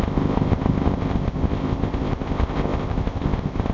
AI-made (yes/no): yes